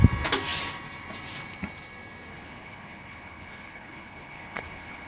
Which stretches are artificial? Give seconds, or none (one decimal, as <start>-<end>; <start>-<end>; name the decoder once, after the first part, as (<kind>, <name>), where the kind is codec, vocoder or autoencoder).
2.3-5.1 (codec, HILCodec)